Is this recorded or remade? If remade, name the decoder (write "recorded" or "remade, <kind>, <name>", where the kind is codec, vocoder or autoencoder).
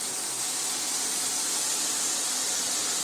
remade, vocoder, BigVGAN v2